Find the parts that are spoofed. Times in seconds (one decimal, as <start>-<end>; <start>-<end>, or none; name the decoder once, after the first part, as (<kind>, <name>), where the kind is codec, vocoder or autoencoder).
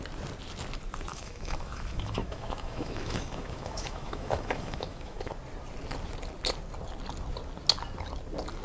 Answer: 1.1-5.3 (autoencoder, DAC-VAE)